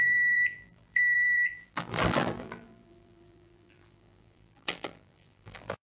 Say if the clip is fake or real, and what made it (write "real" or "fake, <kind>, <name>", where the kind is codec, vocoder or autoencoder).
fake, vocoder, BigVGAN v2